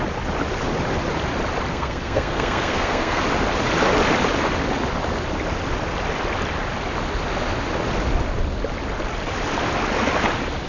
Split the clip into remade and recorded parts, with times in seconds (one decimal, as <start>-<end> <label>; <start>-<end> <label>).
0.0-1.7 recorded; 1.7-3.2 remade; 3.2-10.7 recorded